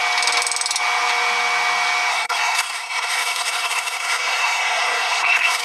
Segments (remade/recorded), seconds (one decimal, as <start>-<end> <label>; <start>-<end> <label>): 0.0-2.1 recorded; 2.1-5.6 remade